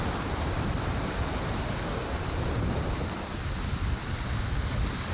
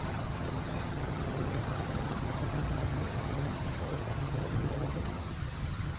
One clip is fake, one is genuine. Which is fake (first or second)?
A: second